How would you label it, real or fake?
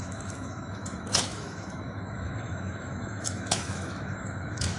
fake